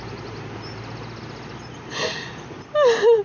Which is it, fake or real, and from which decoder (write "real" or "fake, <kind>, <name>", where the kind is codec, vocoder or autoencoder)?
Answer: real